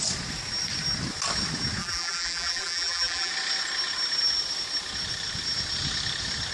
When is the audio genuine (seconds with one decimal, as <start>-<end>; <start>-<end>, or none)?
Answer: 0.0-1.8; 3.3-6.5